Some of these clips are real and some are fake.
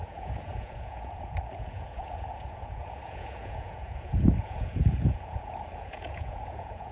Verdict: fake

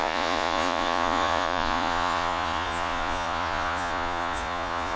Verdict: fake